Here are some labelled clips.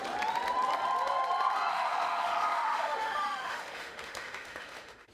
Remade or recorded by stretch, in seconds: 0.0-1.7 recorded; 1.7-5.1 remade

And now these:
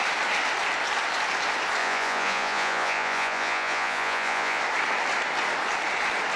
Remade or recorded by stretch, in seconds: 0.0-1.8 recorded; 1.8-4.6 remade; 4.6-6.4 recorded

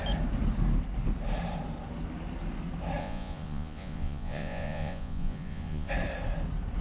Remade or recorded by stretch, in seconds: 0.0-3.0 recorded; 3.0-5.9 remade; 5.9-6.8 recorded

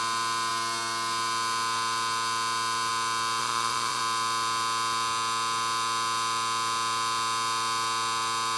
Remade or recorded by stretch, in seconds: 0.0-3.4 recorded; 3.4-4.0 remade; 4.0-8.6 recorded

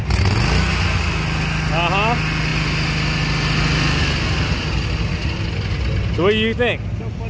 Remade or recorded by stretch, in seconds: 0.0-7.3 recorded